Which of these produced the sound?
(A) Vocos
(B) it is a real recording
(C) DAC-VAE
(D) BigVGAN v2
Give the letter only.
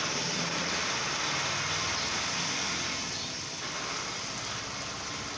B